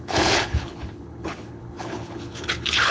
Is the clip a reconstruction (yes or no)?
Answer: yes